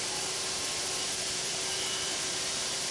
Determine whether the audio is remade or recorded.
remade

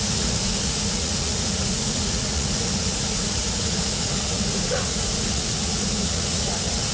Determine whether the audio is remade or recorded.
remade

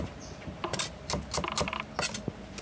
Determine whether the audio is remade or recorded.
recorded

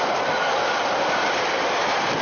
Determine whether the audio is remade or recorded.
recorded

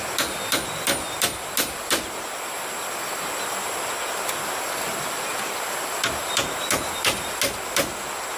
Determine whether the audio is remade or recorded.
recorded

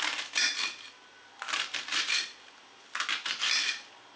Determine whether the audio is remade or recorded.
recorded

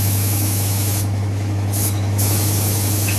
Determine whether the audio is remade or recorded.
remade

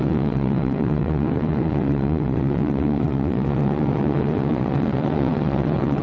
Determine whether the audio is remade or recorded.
remade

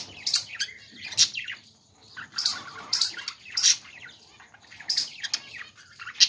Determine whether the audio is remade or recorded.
recorded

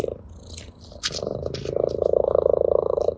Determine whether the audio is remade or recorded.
recorded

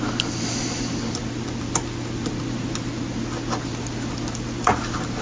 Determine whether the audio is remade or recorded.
recorded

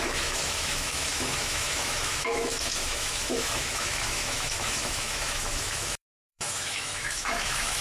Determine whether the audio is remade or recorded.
remade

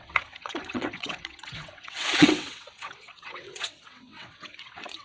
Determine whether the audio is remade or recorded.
remade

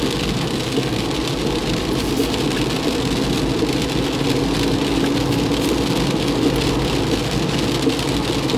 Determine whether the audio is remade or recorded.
recorded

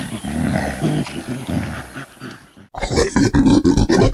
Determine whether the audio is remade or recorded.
recorded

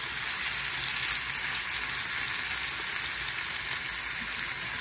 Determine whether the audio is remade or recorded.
recorded